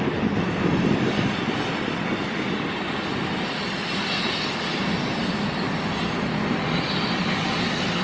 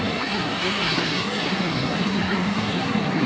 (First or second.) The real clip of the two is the first